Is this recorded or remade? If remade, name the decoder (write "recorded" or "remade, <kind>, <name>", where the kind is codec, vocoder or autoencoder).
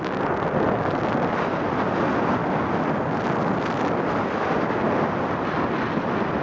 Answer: recorded